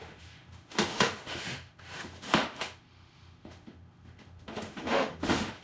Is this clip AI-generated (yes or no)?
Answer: yes